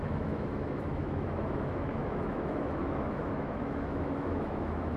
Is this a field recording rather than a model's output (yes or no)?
no